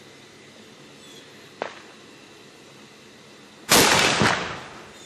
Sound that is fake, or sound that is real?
real